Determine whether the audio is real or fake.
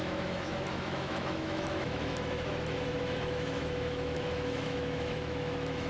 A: fake